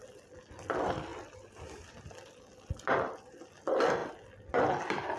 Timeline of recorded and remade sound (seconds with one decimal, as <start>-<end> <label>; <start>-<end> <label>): 0.0-5.2 recorded